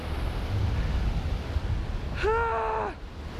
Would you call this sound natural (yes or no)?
yes